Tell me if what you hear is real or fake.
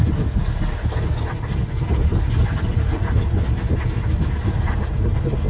real